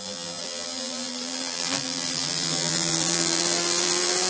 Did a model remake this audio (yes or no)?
yes